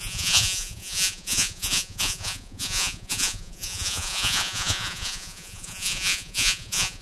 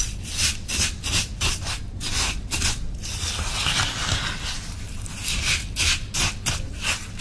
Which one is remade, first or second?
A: first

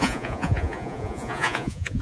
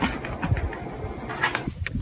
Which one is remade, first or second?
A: first